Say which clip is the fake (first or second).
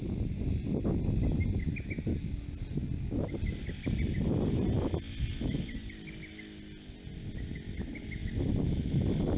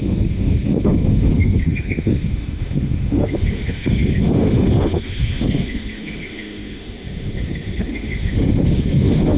second